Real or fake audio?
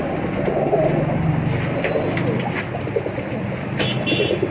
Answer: real